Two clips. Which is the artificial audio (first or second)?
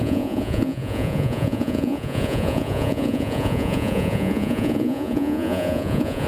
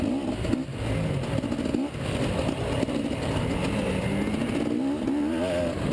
first